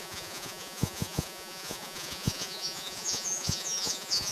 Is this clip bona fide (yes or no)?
no